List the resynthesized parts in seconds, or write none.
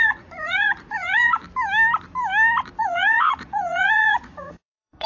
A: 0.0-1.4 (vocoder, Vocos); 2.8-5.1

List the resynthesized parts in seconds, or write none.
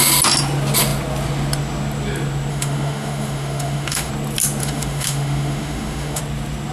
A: 2.5-4.1 (autoencoder, DAC-VAE); 4.6-6.2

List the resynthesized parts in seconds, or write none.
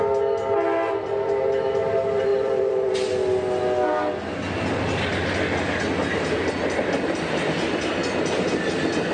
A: 2.3-2.9 (vocoder, BigVGAN v2)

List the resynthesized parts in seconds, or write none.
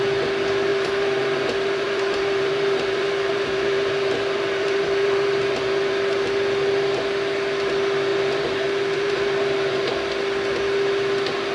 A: 0.7-5.9 (vocoder, BigVGAN v2); 8.1-9.9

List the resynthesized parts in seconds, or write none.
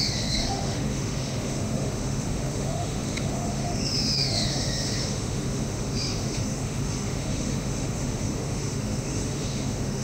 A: 0.0-10.0 (autoencoder, DAC-VAE)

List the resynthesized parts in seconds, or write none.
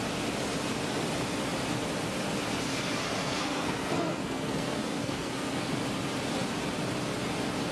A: 3.2-5.7 (codec, SNAC)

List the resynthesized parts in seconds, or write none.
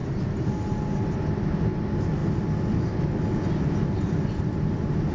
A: none